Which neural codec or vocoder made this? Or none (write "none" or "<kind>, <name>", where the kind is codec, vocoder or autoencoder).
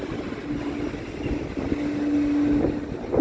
none